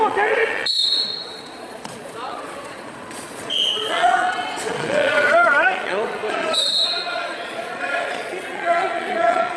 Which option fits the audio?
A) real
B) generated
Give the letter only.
B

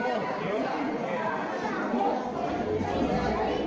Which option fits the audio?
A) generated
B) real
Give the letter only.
B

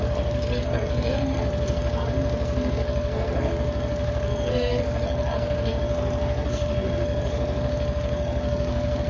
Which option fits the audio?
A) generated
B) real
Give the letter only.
A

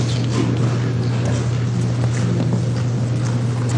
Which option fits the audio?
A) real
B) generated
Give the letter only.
A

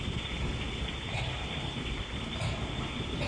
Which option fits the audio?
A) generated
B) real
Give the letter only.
B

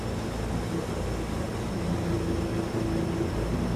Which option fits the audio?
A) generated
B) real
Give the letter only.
B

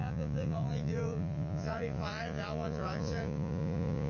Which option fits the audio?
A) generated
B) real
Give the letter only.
A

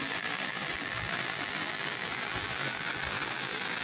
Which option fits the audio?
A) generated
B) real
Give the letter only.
A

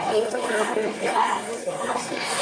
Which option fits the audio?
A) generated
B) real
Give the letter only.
A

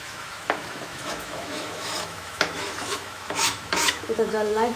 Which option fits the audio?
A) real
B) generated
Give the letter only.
B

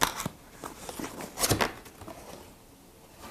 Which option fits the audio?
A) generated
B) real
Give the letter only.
B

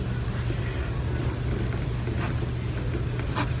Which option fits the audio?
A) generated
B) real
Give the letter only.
B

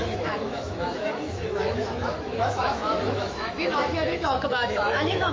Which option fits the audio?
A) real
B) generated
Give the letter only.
B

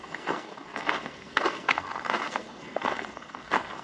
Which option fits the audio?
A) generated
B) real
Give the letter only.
A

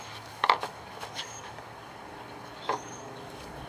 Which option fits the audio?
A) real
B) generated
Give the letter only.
B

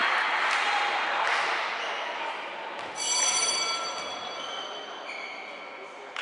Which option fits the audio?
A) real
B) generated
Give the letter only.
A